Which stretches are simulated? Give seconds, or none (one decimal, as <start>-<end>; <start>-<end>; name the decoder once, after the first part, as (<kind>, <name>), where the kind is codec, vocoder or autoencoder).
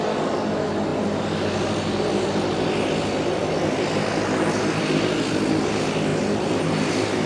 none